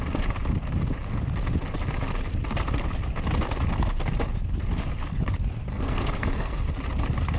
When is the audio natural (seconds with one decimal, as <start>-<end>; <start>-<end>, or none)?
0.0-5.7; 6.6-7.4

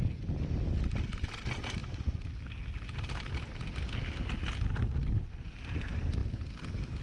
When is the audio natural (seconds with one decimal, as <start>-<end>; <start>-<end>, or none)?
0.0-7.0

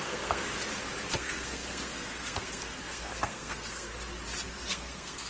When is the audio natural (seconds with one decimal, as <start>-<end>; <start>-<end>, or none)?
0.5-1.1; 3.9-4.5

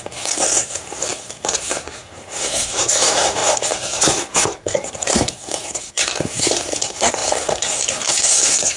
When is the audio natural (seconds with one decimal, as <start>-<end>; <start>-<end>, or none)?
none

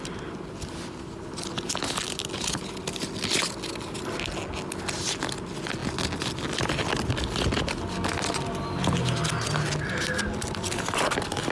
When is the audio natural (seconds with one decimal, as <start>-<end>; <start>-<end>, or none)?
0.0-11.5

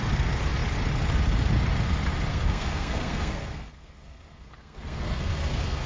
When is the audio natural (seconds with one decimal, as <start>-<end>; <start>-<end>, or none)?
0.0-2.3

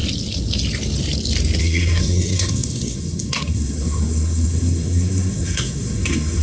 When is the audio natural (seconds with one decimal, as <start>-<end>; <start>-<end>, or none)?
0.0-1.6